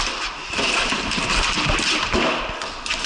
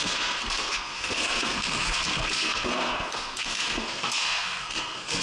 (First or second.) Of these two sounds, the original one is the first